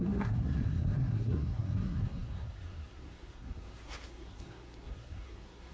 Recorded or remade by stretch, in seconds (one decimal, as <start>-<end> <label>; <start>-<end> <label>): 0.0-5.7 remade